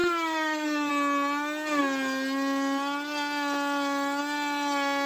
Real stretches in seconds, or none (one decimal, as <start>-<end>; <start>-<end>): 0.9-5.1